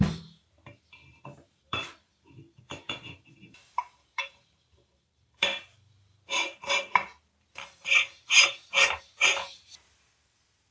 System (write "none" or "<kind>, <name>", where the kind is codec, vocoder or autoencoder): vocoder, BigVGAN v2